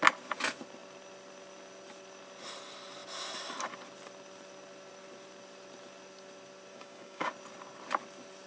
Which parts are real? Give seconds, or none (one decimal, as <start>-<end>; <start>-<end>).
0.0-6.7; 7.3-8.5